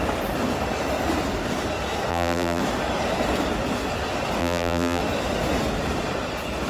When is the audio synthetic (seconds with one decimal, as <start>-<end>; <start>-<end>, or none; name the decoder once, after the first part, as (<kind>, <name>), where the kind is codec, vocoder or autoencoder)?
2.1-2.6 (vocoder, BigVGAN v2); 4.4-5.0